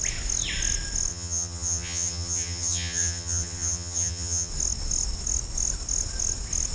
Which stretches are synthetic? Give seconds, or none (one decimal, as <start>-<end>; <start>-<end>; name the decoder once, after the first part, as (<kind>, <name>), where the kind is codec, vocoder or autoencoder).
1.1-4.5 (vocoder, HiFi-GAN)